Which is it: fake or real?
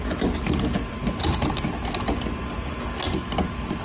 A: real